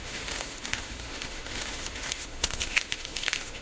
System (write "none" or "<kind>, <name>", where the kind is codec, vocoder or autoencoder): autoencoder, DAC-VAE